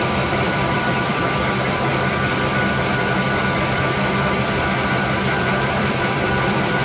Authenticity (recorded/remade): remade